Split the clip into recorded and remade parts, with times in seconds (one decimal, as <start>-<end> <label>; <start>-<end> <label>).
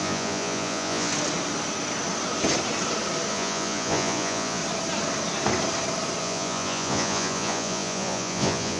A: 0.0-1.1 remade; 1.1-3.3 recorded; 3.3-4.6 remade; 4.6-6.2 recorded; 6.2-8.8 remade